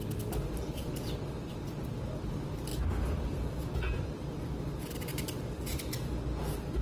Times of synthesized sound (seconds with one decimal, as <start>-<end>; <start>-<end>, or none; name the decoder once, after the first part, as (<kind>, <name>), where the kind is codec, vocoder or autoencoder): 5.1-5.6 (vocoder, BigVGAN v2)